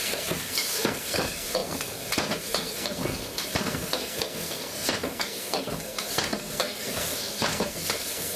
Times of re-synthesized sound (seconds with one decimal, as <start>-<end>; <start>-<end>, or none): 0.0-8.4